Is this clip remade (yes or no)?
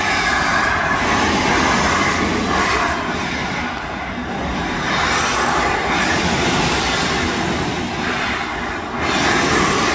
no